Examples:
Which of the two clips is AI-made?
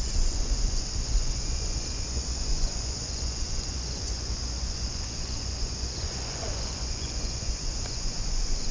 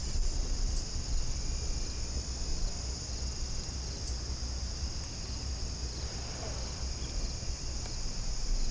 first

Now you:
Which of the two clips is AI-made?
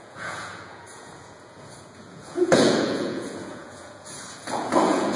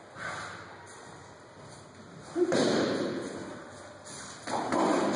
first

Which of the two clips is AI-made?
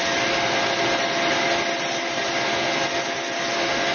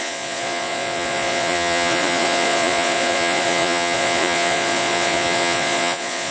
second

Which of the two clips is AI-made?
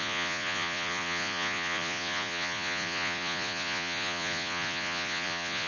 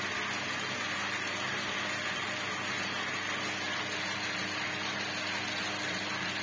first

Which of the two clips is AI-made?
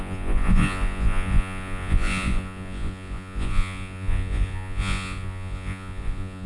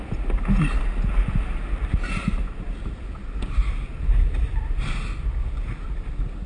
first